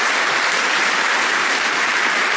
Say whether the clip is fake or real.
real